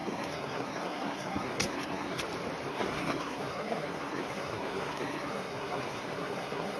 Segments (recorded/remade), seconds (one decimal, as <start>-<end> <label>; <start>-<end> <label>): 0.0-2.2 remade; 2.2-2.7 recorded; 2.7-6.8 remade